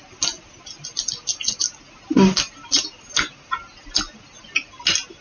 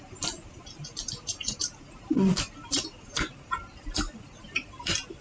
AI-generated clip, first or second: second